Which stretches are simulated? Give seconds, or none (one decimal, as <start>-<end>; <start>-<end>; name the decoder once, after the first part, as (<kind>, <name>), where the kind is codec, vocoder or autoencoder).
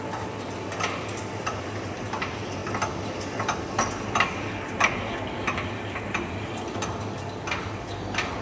none